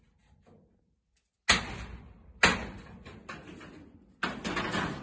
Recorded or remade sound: recorded